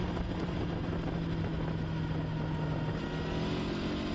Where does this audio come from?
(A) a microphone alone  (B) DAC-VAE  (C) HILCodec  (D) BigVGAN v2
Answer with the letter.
A